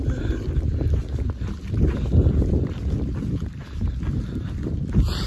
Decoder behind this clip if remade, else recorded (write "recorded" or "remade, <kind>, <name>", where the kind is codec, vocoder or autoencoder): recorded